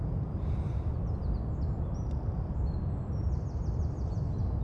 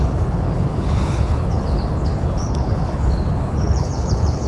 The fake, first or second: second